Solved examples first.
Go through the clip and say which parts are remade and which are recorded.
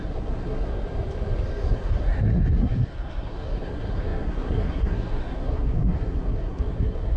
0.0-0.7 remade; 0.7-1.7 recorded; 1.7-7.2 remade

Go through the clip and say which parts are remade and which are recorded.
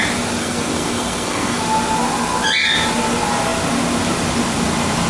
0.0-0.4 recorded; 0.4-1.6 remade; 1.6-5.1 recorded